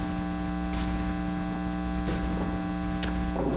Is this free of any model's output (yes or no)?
yes